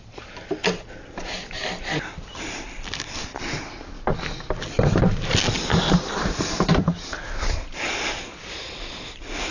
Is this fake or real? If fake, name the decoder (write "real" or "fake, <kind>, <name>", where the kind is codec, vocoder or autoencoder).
real